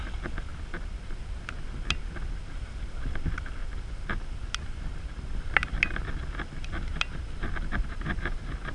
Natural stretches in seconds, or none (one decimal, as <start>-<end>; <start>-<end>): 0.0-6.9